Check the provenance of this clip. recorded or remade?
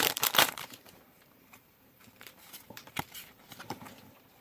remade